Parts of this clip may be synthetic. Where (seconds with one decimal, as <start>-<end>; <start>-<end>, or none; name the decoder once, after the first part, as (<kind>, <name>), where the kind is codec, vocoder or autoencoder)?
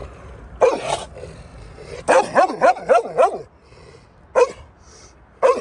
none